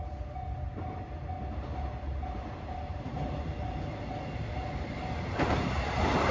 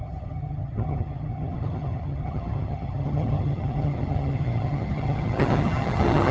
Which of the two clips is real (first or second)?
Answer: first